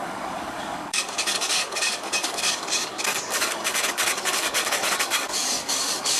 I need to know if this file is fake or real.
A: fake